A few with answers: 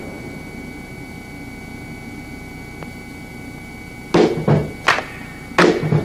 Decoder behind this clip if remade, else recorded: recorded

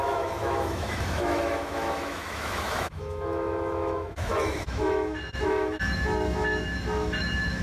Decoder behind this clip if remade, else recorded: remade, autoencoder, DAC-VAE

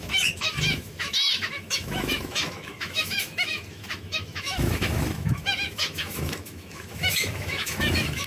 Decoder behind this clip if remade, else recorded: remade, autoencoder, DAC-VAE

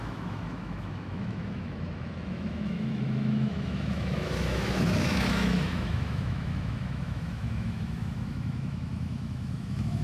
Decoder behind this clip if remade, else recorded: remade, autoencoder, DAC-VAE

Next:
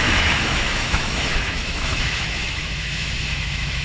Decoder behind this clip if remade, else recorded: remade, autoencoder, DAC-VAE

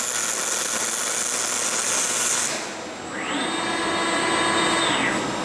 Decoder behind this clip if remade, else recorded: recorded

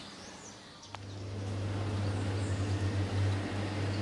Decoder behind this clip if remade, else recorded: recorded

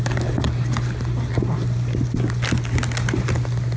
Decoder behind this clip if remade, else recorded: recorded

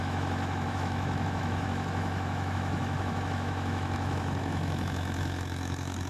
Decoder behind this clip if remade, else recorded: remade, autoencoder, DAC-VAE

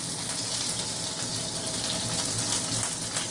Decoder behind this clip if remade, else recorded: recorded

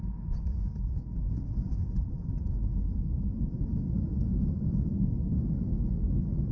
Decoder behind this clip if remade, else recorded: recorded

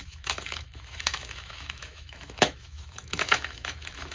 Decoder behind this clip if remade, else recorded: remade, autoencoder, DAC-VAE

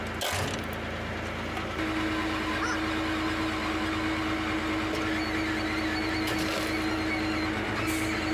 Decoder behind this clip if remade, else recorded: recorded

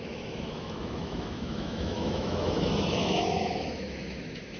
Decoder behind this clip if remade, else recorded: remade, autoencoder, DAC-VAE